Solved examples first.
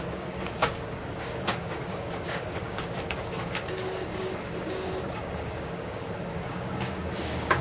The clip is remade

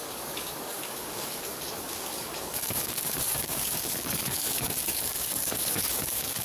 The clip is remade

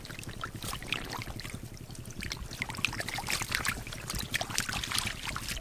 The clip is recorded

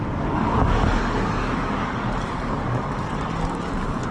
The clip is remade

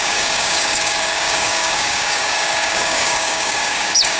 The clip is remade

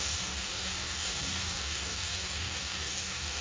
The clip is remade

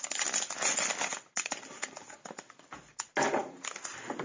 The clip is recorded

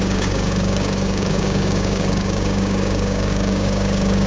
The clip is remade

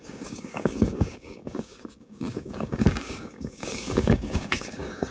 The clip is remade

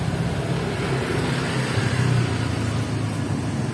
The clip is recorded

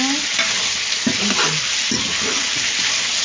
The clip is recorded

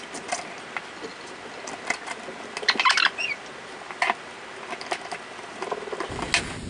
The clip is recorded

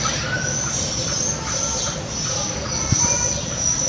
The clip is recorded